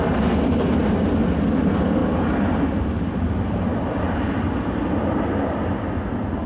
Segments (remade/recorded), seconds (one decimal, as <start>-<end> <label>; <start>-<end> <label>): 0.0-6.5 recorded